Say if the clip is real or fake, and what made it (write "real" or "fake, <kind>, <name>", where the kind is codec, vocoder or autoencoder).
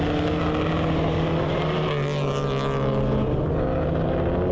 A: real